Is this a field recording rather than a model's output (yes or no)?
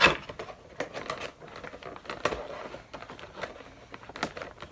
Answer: yes